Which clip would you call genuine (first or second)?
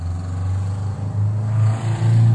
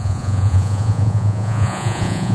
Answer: first